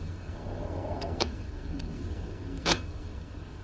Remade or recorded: remade